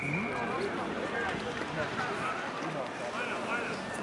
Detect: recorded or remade recorded